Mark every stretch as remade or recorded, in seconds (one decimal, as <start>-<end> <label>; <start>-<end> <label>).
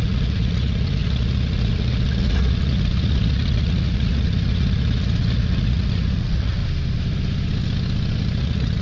0.0-6.6 remade; 6.6-8.4 recorded; 8.4-8.8 remade